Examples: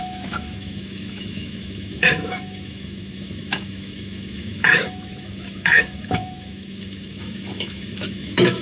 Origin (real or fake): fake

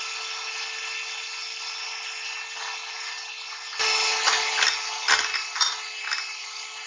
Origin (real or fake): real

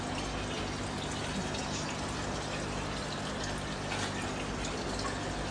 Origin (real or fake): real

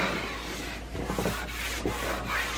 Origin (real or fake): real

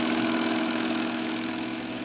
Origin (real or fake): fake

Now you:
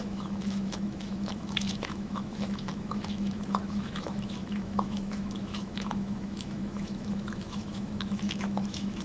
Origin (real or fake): fake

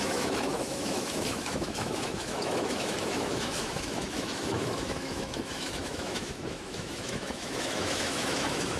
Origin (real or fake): fake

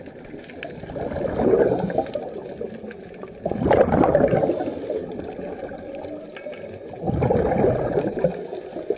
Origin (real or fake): real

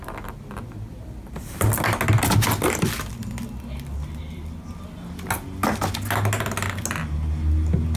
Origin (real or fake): real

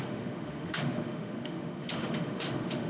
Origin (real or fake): fake